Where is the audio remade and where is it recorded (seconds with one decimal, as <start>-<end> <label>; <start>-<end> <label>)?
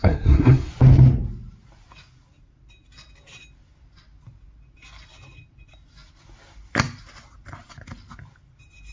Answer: 0.0-0.7 remade; 0.7-8.9 recorded